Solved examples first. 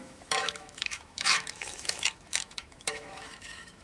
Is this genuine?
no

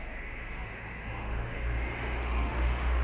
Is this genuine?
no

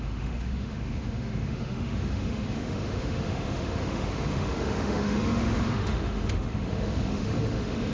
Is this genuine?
no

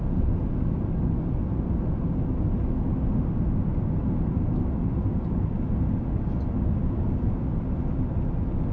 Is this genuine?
yes